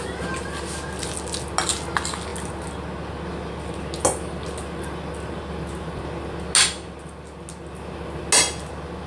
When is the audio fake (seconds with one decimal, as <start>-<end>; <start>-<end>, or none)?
none